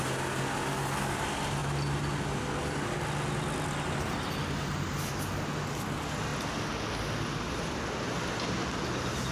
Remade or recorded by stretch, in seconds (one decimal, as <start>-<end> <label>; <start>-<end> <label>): 0.0-9.3 recorded